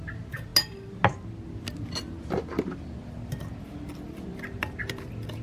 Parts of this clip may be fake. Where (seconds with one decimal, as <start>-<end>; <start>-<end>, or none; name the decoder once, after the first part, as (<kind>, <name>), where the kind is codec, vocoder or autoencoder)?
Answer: none